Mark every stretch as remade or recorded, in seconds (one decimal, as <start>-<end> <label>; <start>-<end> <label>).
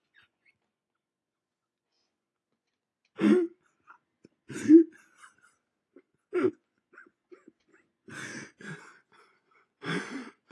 0.0-2.9 remade; 2.9-6.5 recorded; 6.5-10.5 remade